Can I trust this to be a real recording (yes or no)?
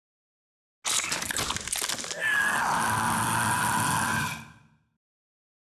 yes